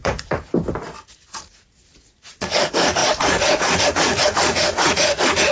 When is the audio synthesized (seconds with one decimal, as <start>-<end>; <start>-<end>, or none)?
0.0-0.5; 1.3-5.5

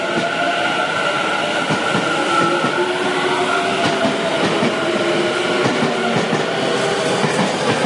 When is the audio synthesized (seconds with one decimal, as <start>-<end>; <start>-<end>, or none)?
none

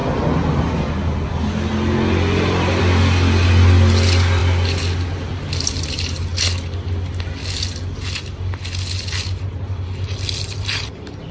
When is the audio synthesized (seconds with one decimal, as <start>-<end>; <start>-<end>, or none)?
none

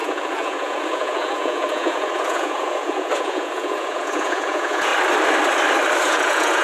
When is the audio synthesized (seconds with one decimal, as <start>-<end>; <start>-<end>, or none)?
0.0-4.9; 6.0-6.6

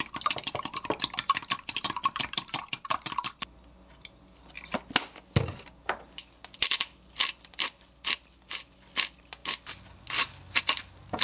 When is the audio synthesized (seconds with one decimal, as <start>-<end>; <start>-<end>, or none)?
none

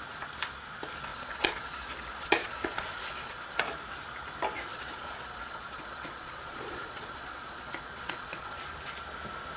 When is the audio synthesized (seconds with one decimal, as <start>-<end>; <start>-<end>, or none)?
1.1-3.6; 4.7-8.6

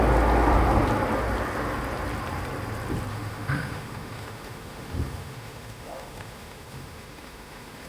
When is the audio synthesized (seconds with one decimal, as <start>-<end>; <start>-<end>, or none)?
3.1-7.9

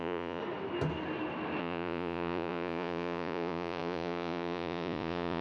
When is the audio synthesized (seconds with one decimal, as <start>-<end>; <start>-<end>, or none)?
0.0-0.4; 1.6-5.4